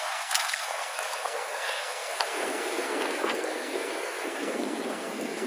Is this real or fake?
fake